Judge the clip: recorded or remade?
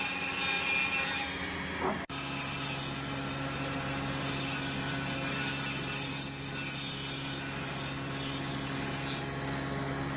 recorded